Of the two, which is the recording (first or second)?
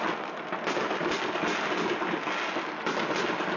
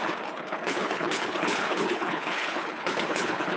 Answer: first